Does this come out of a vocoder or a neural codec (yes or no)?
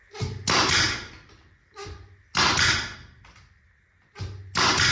no